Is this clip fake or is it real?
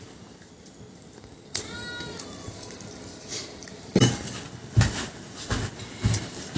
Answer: real